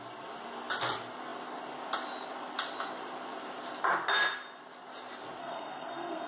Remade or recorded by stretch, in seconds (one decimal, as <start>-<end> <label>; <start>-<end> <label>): 0.0-5.4 recorded; 5.4-6.3 remade